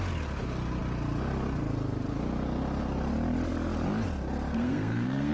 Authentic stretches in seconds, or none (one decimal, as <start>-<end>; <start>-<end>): 0.0-4.5